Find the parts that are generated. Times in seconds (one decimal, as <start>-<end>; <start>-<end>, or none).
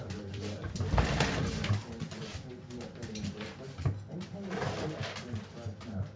none